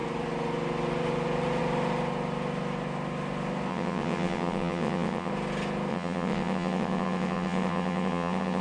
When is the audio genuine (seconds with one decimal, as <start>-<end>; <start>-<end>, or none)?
0.0-3.7; 5.3-5.9